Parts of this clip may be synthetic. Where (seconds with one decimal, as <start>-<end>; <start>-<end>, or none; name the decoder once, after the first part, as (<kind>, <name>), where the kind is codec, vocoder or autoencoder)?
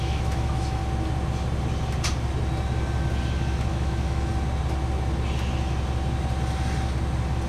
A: 0.0-0.8 (autoencoder, DAC-VAE); 3.7-4.3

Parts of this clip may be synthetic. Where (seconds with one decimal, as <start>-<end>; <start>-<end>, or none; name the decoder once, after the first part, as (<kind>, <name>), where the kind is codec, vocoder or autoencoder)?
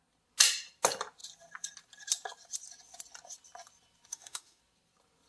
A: 4.1-4.6 (autoencoder, DAC-VAE)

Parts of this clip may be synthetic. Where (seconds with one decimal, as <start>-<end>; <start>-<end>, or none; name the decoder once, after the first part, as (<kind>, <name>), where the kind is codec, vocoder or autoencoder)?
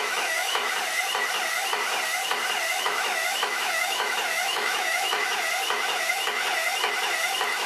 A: 0.0-0.6 (autoencoder, DAC-VAE); 2.8-5.3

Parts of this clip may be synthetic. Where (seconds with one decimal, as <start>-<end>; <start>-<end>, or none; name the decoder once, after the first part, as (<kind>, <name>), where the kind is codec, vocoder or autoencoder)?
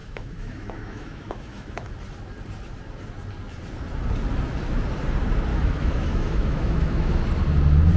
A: 0.0-1.9 (autoencoder, DAC-VAE); 5.5-7.2